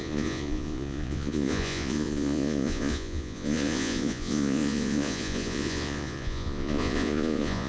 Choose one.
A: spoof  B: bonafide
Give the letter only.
A